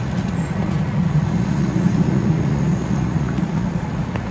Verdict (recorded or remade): remade